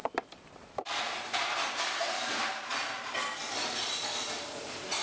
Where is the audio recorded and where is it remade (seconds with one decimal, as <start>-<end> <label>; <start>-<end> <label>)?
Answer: 0.0-5.0 remade